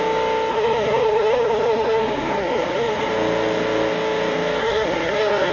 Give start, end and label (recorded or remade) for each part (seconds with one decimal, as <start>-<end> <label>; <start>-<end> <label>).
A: 0.0-0.5 recorded; 0.5-3.1 remade; 3.1-4.6 recorded; 4.6-5.5 remade